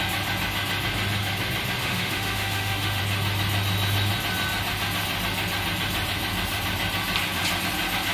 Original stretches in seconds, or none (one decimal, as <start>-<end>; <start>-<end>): 0.0-1.8; 3.0-8.1